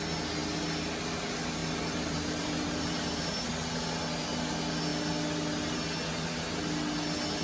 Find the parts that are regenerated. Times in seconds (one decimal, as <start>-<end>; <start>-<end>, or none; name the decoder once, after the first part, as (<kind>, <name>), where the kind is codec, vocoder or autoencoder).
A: 1.6-3.5 (vocoder, BigVGAN v2)